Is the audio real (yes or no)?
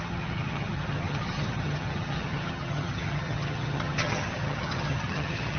no